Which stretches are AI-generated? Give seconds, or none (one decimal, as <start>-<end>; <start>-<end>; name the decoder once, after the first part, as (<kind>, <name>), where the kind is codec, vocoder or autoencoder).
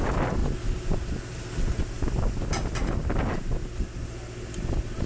none